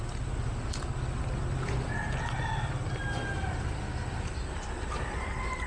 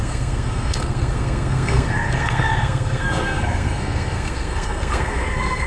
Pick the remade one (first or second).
second